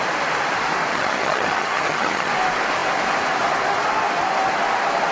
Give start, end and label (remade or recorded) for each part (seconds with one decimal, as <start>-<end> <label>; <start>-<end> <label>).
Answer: 0.0-0.9 recorded; 0.9-2.3 remade; 2.3-5.1 recorded